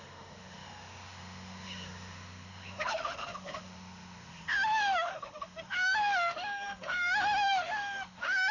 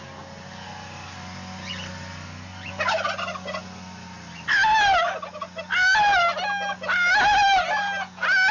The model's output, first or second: first